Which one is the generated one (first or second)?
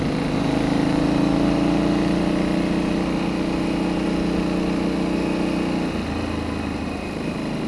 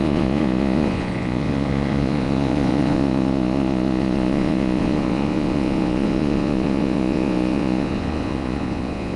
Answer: second